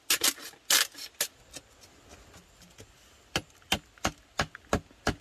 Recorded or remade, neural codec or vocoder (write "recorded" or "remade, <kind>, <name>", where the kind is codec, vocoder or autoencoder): recorded